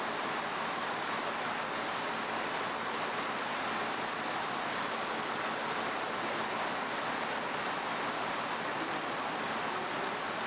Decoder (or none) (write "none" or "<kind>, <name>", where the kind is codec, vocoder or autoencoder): none